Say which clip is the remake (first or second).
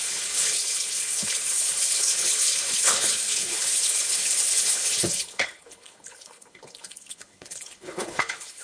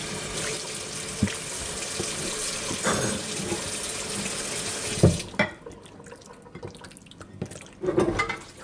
first